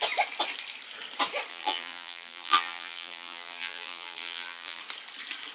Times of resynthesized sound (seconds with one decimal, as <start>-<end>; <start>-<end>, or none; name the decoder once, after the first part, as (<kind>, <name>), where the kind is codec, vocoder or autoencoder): 1.5-4.8 (vocoder, BigVGAN v2)